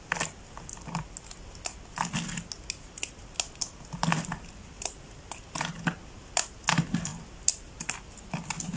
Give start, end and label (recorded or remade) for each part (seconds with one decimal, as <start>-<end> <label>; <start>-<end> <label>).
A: 0.0-8.8 recorded